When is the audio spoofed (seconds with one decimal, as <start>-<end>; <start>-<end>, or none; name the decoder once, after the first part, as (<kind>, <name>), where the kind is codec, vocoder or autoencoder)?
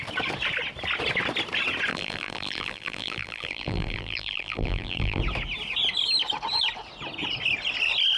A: 1.9-5.2 (vocoder, BigVGAN v2)